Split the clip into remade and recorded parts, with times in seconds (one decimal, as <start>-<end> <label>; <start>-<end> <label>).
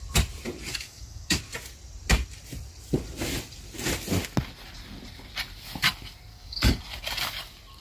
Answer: 0.0-0.7 recorded; 0.7-1.4 remade; 1.4-6.3 recorded; 6.3-6.8 remade; 6.8-7.8 recorded